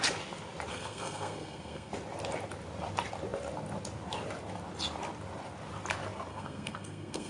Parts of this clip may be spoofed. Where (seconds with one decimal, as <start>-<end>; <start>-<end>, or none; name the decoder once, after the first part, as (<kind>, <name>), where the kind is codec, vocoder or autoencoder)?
0.7-1.9 (codec, SNAC); 6.3-7.3